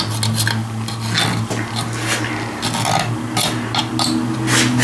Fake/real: real